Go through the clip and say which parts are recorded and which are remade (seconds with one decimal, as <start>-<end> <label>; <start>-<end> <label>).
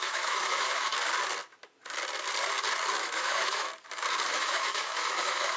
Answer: 0.0-0.9 remade; 0.9-3.0 recorded; 3.0-3.7 remade; 3.7-4.3 recorded; 4.3-5.6 remade